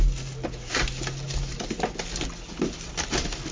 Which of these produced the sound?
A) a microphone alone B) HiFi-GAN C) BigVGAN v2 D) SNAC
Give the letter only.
A